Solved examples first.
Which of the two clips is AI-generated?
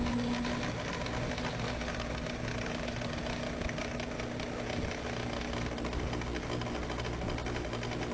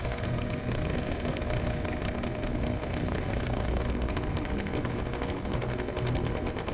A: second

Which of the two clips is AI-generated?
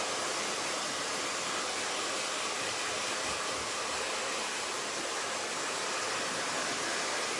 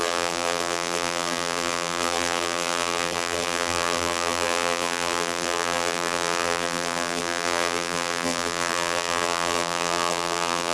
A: second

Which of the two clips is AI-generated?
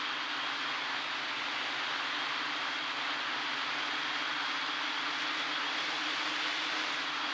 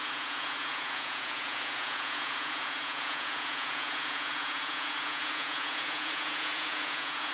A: second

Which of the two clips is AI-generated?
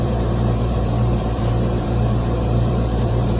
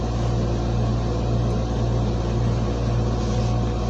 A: first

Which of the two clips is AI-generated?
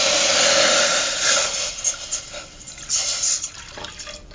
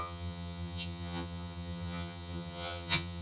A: second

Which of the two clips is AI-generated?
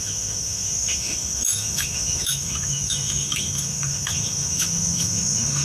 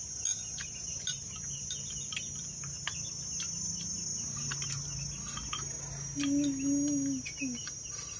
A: first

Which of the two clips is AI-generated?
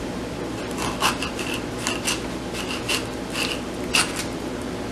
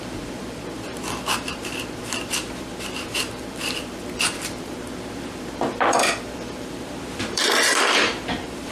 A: second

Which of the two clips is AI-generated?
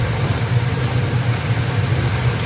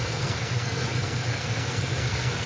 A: second